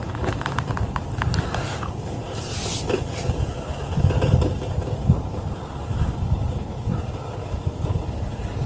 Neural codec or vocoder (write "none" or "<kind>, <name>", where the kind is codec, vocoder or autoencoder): none